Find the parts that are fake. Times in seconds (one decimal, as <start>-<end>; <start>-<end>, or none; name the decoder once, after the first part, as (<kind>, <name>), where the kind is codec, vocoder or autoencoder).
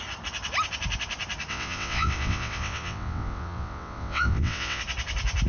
1.5-4.8 (vocoder, WaveNeXt)